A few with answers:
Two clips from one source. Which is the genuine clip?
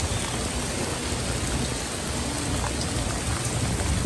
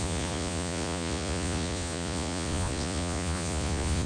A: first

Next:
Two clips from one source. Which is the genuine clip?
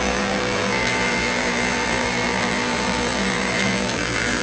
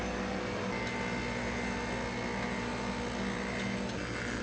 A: second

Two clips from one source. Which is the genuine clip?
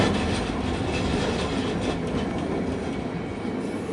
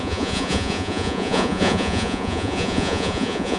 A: first